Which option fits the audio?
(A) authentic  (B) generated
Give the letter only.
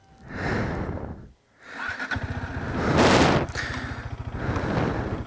A